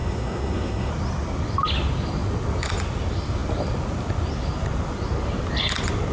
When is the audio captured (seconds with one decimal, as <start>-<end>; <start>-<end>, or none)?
0.9-6.1